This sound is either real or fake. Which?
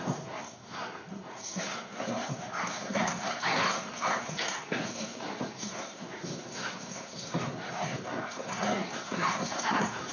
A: fake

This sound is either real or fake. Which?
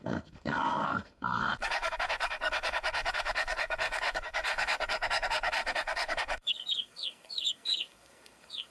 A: fake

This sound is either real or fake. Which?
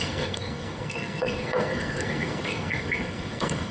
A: fake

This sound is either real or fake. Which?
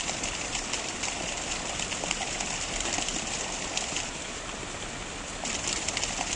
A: real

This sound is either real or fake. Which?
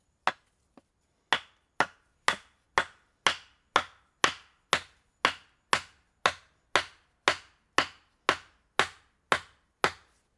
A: real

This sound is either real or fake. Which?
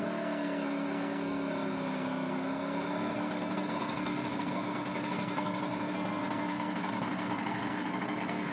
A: fake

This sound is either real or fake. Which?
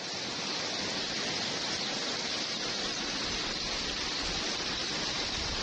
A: real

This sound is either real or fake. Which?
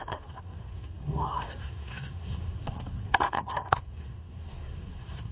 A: fake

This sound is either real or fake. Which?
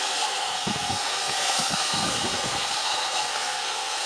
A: fake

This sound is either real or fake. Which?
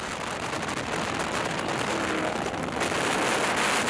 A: real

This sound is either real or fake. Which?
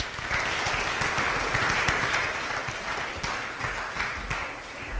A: real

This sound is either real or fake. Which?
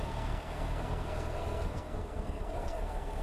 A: fake